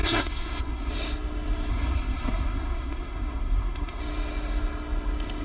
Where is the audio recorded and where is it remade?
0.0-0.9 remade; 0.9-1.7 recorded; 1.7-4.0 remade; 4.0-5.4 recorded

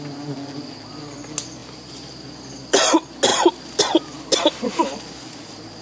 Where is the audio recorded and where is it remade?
0.0-5.8 recorded

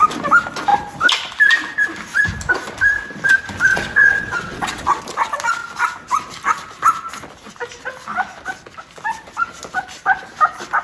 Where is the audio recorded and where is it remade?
0.0-3.7 recorded; 3.7-5.0 remade; 5.0-10.8 recorded

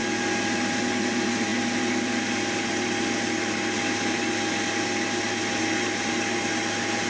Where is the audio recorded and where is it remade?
0.0-7.1 recorded

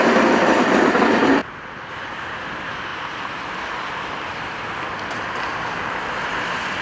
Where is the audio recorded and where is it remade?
0.0-6.8 remade

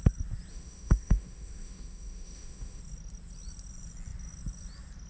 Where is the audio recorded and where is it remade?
0.0-0.5 recorded; 0.5-2.8 remade; 2.8-5.1 recorded

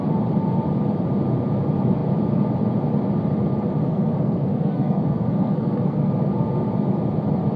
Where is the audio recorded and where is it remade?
0.0-3.8 recorded; 3.8-6.1 remade; 6.1-7.6 recorded